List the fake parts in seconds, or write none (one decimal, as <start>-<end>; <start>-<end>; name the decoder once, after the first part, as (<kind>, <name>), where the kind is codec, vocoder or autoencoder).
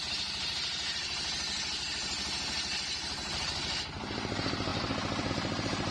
0.0-4.7 (vocoder, BigVGAN v2); 5.3-5.9